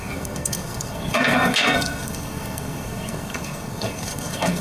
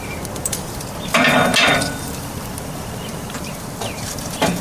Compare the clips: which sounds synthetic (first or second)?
first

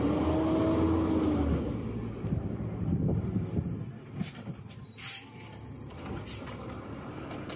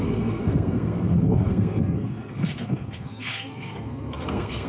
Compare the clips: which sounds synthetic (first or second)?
second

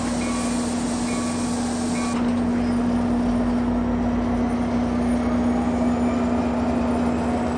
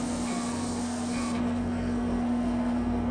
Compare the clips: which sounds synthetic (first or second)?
second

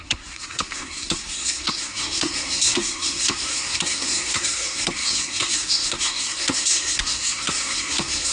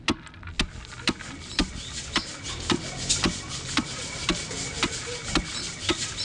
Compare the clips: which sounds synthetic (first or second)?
first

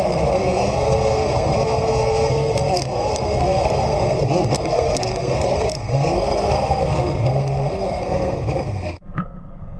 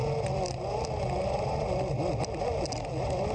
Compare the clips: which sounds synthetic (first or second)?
first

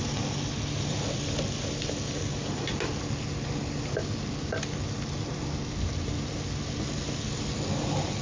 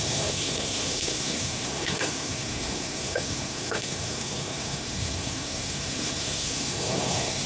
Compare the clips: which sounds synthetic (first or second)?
second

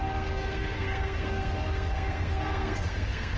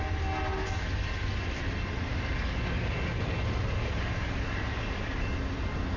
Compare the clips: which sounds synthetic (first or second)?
first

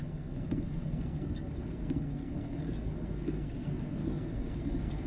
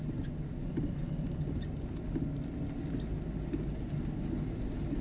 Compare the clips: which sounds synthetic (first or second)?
first